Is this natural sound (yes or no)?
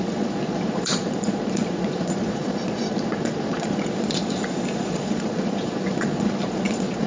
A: no